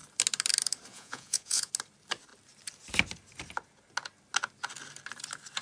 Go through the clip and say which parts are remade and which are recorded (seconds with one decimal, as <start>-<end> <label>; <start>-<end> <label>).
0.0-0.9 recorded; 0.9-1.7 remade; 1.7-5.6 recorded